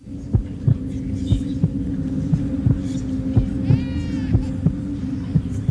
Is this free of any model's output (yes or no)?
yes